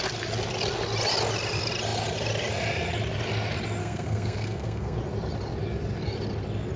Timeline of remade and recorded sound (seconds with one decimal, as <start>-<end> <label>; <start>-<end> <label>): 0.0-3.8 recorded; 3.8-5.0 remade; 5.0-6.8 recorded

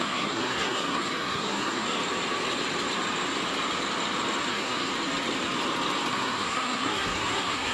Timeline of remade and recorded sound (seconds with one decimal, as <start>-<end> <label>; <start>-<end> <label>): 0.0-2.0 remade; 2.0-4.5 recorded; 4.5-4.9 remade; 4.9-6.1 recorded; 6.1-7.7 remade

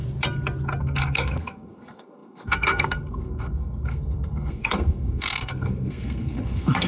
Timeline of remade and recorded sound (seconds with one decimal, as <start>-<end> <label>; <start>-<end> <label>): 0.0-0.8 recorded; 0.8-6.9 remade

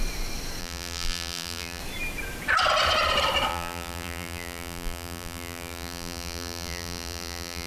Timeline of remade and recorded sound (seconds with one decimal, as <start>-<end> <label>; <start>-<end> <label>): 0.0-0.6 recorded; 0.6-1.8 remade; 1.8-3.5 recorded; 3.5-7.7 remade

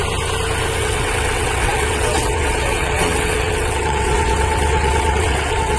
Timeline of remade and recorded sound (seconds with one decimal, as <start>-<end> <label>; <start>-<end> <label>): 0.0-0.8 recorded; 0.8-5.8 remade

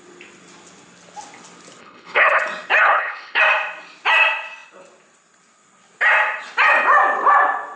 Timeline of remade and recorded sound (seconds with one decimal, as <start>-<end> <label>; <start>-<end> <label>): 0.0-1.8 recorded; 1.8-2.4 remade; 2.4-2.8 recorded; 2.8-3.4 remade; 3.4-7.8 recorded

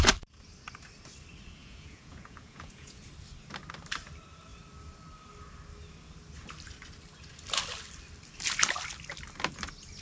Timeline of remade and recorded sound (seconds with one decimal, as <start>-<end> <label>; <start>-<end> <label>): 0.0-1.6 recorded; 1.6-3.0 remade; 3.0-10.0 recorded